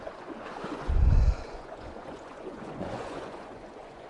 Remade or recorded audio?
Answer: remade